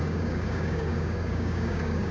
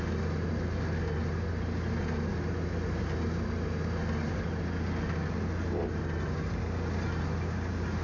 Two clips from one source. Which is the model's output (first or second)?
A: first